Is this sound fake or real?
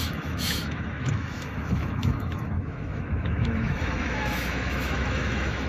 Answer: fake